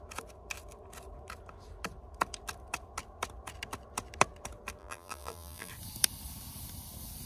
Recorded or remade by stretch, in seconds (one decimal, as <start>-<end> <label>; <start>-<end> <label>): 0.0-4.8 recorded; 4.8-5.7 remade; 5.7-7.3 recorded